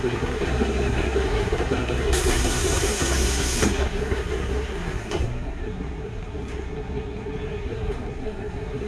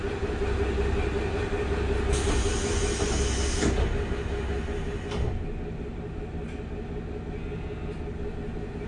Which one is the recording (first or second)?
second